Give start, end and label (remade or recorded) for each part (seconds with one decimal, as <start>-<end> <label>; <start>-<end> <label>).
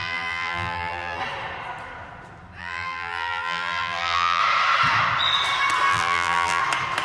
0.0-1.2 remade; 1.2-2.6 recorded; 2.6-4.4 remade; 4.4-5.9 recorded; 5.9-6.6 remade; 6.6-7.0 recorded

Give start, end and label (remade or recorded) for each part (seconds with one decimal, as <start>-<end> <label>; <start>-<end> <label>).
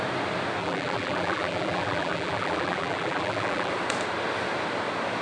0.0-0.6 recorded; 0.6-3.7 remade; 3.7-5.2 recorded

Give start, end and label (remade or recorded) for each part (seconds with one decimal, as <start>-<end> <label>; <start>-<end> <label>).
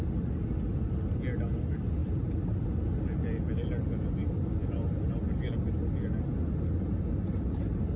0.0-2.0 recorded; 2.0-2.8 remade; 2.8-4.2 recorded; 4.2-5.1 remade; 5.1-8.0 recorded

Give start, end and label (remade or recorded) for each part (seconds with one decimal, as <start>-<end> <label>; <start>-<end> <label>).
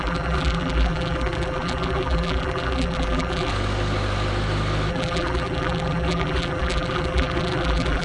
0.0-3.5 remade; 3.5-4.9 recorded; 4.9-8.0 remade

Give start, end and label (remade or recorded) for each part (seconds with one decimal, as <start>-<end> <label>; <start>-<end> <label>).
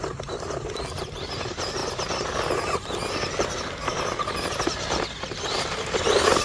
0.0-1.8 remade; 1.8-5.6 recorded; 5.6-6.4 remade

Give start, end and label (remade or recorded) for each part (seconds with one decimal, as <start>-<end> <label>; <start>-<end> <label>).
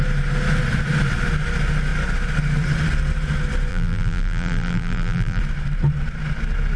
0.0-3.7 recorded; 3.7-5.4 remade; 5.4-6.8 recorded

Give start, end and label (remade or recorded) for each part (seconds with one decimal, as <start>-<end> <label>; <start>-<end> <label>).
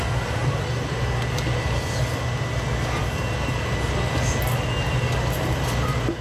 0.0-6.2 recorded